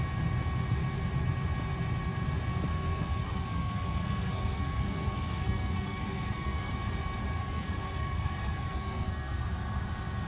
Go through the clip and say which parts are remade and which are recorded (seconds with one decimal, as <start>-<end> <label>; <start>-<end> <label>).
0.0-2.7 recorded; 2.7-6.7 remade; 6.7-7.4 recorded; 7.4-9.8 remade; 9.8-10.3 recorded